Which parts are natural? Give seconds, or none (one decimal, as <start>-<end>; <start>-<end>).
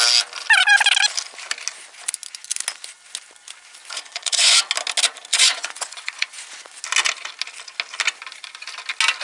0.0-3.8; 4.6-5.3; 6.5-9.2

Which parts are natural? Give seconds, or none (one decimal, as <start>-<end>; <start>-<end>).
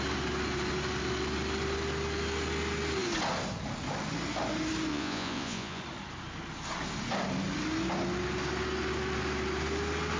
0.0-4.9; 5.8-10.2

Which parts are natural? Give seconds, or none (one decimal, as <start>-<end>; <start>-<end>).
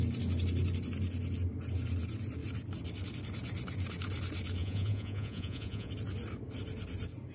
0.0-4.6; 5.9-7.3